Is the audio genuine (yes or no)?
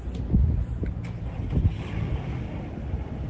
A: yes